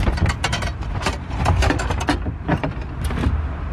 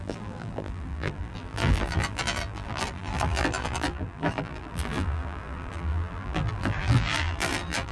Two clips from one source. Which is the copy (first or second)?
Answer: second